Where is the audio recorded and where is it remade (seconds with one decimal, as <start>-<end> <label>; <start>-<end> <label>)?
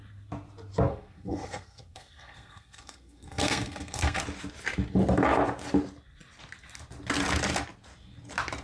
0.0-0.9 recorded; 0.9-4.2 remade; 4.2-8.6 recorded